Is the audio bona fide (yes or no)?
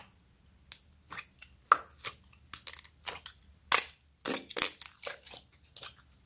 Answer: yes